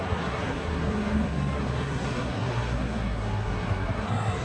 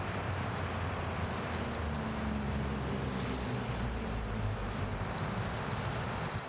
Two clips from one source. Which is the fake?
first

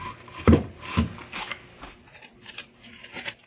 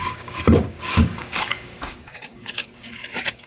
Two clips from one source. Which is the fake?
second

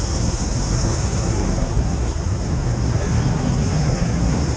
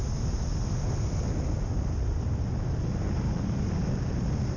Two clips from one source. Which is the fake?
first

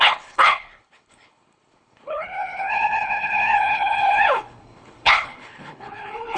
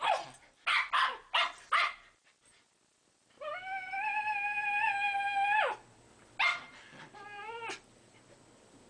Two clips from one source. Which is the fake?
first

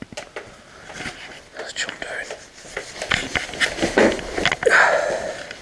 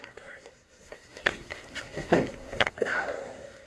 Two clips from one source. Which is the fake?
second